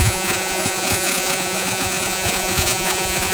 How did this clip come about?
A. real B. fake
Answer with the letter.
B